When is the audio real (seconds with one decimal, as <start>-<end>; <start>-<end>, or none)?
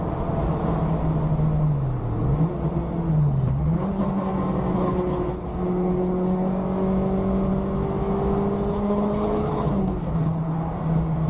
0.0-3.1; 4.0-4.7; 6.5-8.7; 10.6-11.3